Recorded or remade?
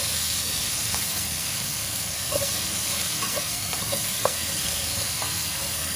remade